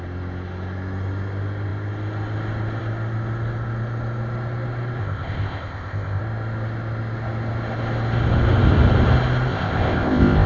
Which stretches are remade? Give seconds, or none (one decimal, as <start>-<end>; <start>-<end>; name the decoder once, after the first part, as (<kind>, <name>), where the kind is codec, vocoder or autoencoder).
5.0-6.2 (codec, ZipCodec); 9.5-10.5